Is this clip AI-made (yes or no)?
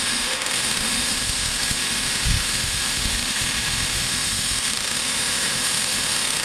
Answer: yes